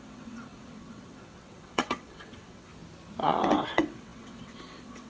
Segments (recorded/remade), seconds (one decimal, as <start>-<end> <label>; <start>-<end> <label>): 0.0-2.7 remade; 2.7-3.4 recorded; 3.4-5.1 remade